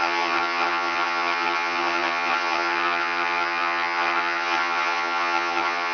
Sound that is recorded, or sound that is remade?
remade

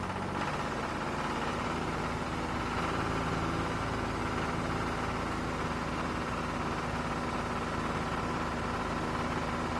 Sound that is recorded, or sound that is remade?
recorded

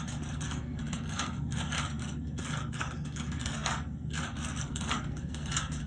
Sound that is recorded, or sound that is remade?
remade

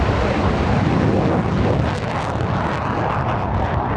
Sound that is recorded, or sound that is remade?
recorded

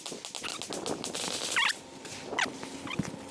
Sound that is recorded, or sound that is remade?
recorded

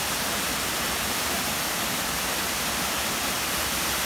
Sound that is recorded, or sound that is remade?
remade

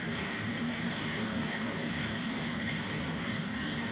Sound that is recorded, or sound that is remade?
remade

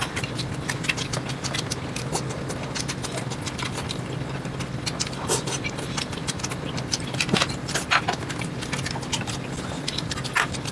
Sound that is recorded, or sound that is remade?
recorded